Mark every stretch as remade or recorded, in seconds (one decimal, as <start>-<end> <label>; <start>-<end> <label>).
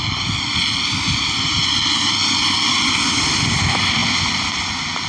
0.0-5.1 recorded